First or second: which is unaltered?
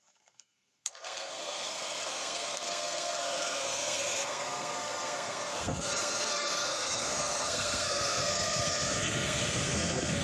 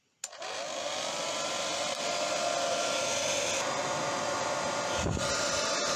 second